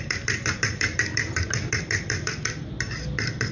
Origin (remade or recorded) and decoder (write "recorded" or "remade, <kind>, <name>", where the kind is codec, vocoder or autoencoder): remade, vocoder, BigVGAN v2